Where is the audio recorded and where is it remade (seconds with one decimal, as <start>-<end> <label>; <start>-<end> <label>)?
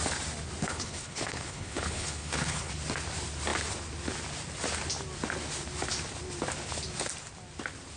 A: 0.0-0.6 recorded; 0.6-2.7 remade; 2.7-8.0 recorded